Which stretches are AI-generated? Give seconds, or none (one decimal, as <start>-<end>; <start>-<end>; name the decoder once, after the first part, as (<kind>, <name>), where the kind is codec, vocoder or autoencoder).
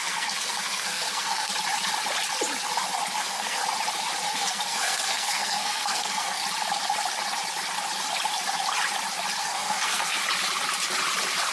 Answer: 0.0-1.5 (codec, SNAC); 3.2-3.6; 4.3-6.4; 9.4-10.2